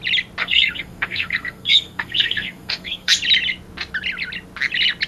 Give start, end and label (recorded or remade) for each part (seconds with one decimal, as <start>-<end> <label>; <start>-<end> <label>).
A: 0.0-0.4 recorded; 0.4-3.1 remade; 3.1-5.1 recorded